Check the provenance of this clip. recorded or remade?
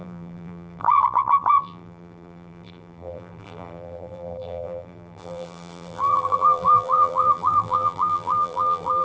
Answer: remade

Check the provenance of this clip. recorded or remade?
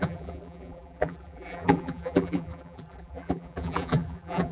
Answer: remade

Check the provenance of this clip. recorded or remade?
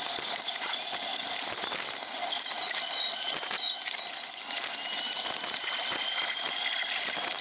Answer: recorded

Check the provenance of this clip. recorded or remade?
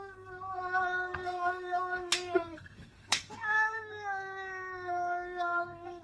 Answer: remade